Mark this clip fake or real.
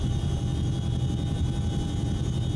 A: real